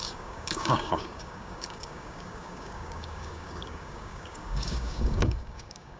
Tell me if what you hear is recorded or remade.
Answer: remade